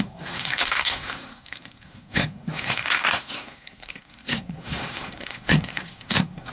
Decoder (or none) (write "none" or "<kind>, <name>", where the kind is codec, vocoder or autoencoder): codec, SNAC